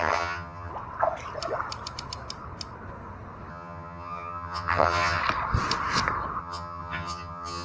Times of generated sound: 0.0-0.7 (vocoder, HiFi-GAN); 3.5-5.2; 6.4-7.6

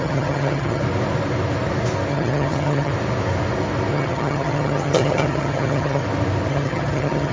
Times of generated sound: 0.0-0.8 (vocoder, HiFi-GAN); 2.1-2.9; 3.9-6.0; 6.5-7.3

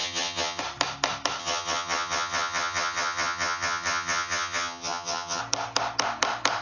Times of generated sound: 0.0-0.6 (vocoder, HiFi-GAN); 1.4-5.4

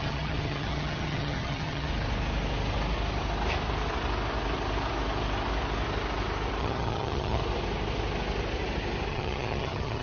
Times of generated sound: 0.0-1.9 (vocoder, HiFi-GAN); 6.6-7.4; 9.1-10.0

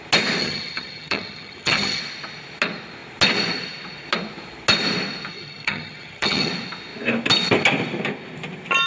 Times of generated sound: 0.4-2.0 (vocoder, HiFi-GAN); 5.3-6.5

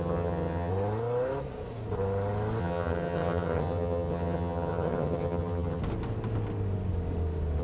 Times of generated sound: 0.0-0.7 (vocoder, HiFi-GAN); 2.6-5.8